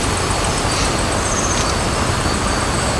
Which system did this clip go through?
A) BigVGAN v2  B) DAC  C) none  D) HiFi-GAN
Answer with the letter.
C